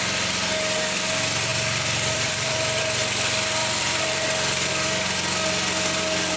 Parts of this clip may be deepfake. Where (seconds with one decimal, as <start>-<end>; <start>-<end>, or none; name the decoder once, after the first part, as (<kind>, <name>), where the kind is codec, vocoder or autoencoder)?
1.5-2.8 (vocoder, BigVGAN v2); 3.6-4.7